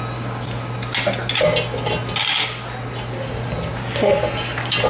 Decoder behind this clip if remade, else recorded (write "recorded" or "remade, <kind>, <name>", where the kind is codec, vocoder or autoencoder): recorded